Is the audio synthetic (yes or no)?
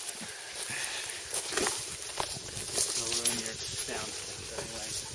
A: no